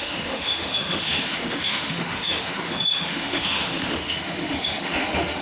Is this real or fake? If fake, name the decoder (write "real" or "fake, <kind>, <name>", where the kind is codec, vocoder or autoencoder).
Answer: fake, autoencoder, DAC-VAE